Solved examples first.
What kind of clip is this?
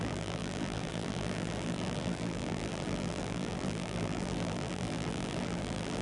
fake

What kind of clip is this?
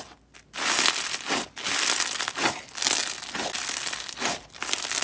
real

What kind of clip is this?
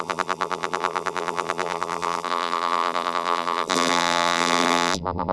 fake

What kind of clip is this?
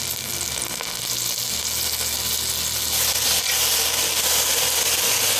real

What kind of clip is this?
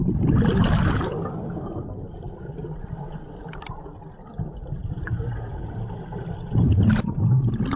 fake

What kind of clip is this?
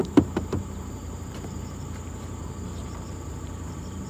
fake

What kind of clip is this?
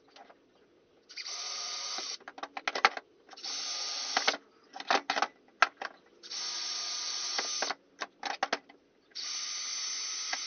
real